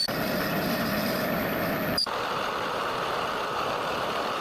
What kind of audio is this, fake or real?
fake